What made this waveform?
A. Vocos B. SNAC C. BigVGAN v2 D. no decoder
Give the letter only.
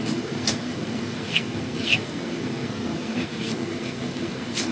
B